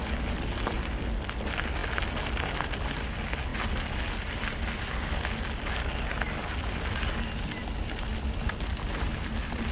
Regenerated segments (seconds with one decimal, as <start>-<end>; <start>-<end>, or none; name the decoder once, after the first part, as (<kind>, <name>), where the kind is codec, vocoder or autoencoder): none